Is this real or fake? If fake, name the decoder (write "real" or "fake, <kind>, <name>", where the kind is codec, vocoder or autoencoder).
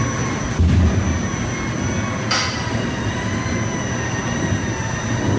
real